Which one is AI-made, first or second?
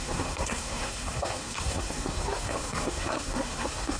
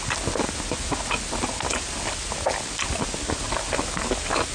first